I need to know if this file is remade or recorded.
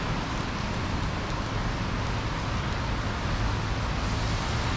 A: recorded